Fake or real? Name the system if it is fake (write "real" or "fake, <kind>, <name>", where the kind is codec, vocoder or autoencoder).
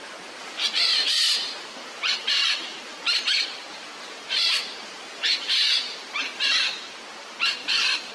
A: fake, vocoder, BigVGAN v2